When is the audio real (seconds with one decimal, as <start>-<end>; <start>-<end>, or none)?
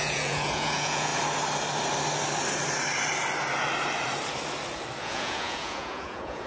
1.1-5.0